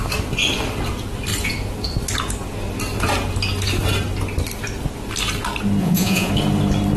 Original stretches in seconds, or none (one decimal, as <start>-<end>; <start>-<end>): 0.0-5.8; 6.3-7.0